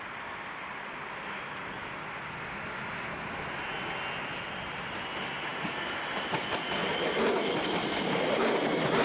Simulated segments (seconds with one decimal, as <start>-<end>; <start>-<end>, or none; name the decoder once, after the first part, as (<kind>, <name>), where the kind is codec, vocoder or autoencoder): none